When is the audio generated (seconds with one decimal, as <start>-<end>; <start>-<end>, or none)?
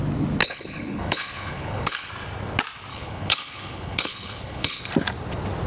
0.4-2.1; 2.9-4.8